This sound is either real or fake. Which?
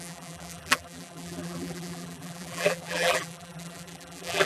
fake